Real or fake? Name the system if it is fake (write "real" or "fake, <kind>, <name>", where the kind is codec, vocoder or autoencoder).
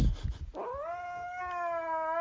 real